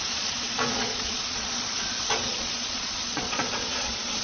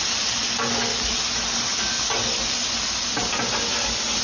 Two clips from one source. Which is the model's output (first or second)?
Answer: first